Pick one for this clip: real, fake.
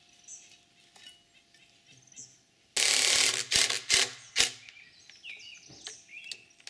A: real